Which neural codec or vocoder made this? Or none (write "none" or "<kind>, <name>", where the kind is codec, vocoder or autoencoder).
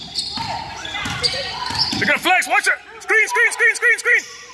none